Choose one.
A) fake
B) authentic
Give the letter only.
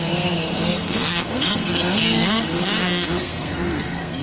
A